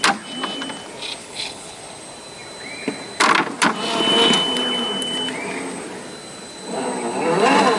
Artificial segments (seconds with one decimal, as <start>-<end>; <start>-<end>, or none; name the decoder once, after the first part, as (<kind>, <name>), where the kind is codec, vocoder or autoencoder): 1.2-1.8 (codec, HILCodec)